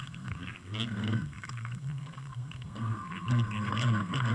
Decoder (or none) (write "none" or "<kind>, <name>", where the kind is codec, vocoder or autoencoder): codec, SNAC